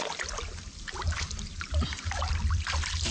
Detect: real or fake real